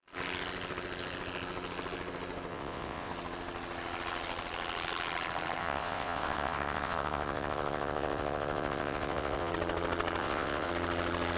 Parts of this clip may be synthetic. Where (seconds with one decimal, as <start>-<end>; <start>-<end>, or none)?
2.5-3.1; 5.6-9.5; 10.2-10.7